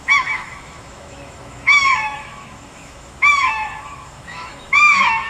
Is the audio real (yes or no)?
no